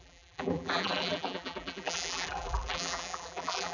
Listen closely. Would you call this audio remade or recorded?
remade